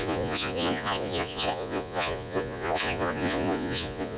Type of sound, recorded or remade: remade